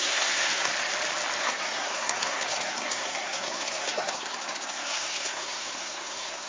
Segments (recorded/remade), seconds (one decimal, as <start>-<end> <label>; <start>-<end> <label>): 0.0-0.7 remade; 0.7-1.4 recorded; 1.4-6.5 remade